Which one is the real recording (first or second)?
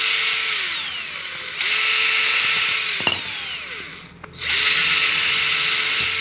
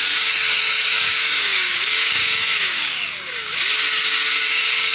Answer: first